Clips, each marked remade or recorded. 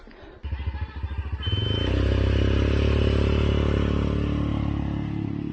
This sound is recorded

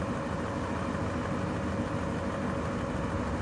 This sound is recorded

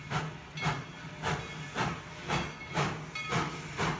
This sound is recorded